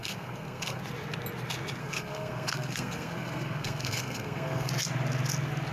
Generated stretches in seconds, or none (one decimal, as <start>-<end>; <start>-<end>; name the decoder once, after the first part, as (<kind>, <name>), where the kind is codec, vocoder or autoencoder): 0.0-0.8 (codec, SNAC); 1.8-4.7